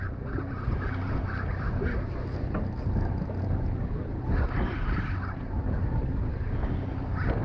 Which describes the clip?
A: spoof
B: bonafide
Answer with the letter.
B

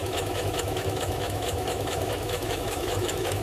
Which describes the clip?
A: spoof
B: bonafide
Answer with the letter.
A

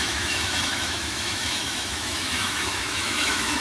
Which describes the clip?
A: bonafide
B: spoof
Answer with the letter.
B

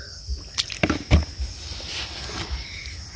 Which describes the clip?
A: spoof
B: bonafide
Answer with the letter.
B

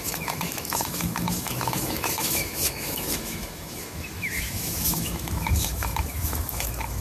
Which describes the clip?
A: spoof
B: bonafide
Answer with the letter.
A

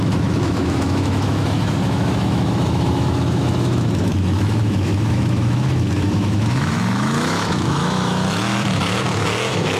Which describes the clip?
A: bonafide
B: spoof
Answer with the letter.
B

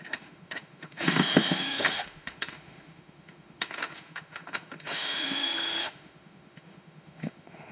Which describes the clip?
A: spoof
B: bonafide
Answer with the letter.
A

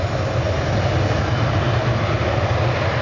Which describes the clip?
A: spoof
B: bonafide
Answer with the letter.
B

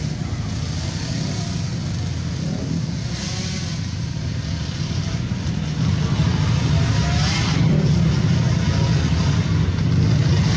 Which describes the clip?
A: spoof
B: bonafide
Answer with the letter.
B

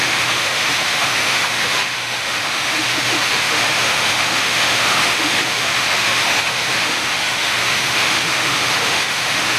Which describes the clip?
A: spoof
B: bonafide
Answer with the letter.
A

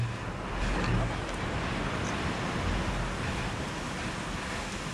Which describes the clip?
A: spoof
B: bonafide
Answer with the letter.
B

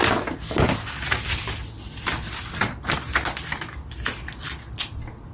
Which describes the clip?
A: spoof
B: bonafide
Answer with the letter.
B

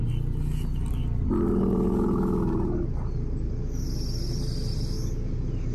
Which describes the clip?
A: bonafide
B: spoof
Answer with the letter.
A